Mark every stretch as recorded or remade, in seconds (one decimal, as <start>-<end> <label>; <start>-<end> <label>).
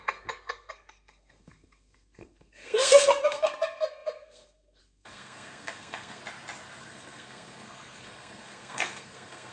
0.0-6.2 remade; 6.2-6.8 recorded; 6.8-9.5 remade